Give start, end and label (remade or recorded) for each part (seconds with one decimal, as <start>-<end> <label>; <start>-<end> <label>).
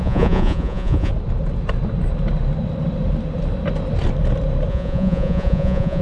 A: 0.0-1.1 remade; 1.1-4.7 recorded; 4.7-6.0 remade